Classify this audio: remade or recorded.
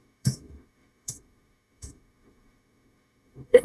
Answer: remade